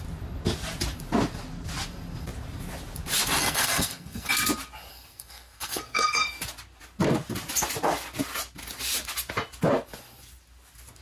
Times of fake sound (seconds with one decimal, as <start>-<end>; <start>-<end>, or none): 3.4-4.3; 4.9-6.1